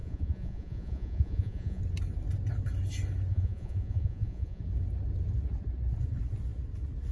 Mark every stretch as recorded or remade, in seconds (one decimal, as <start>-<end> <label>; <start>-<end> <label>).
0.0-1.8 remade; 1.8-3.3 recorded; 3.3-4.6 remade; 4.6-7.1 recorded